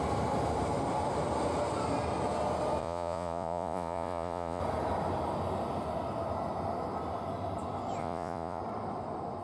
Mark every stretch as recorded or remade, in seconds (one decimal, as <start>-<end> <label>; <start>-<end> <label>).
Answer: 0.0-2.8 recorded; 2.8-4.6 remade; 4.6-8.0 recorded; 8.0-8.6 remade; 8.6-9.4 recorded